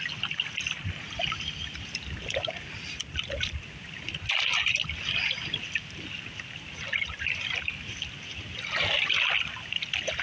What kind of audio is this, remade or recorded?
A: recorded